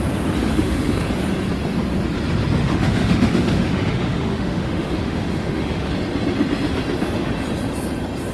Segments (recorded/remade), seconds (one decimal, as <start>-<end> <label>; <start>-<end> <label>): 0.0-0.5 recorded; 0.5-1.1 remade; 1.1-2.6 recorded; 2.6-5.9 remade; 5.9-8.3 recorded